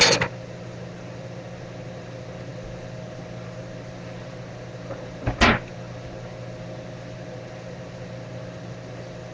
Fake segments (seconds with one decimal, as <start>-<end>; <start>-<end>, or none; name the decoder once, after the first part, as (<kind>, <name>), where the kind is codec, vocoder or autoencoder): none

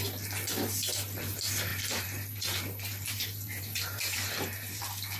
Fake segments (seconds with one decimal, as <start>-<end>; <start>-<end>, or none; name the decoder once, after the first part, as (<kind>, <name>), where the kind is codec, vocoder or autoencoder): 1.7-4.8 (vocoder, BigVGAN v2)